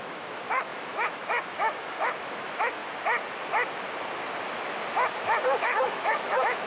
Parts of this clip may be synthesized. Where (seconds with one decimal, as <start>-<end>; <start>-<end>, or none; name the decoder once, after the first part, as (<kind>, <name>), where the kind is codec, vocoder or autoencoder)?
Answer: 0.0-2.8 (autoencoder, DAC-VAE); 5.6-6.7